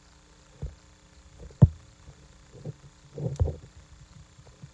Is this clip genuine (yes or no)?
yes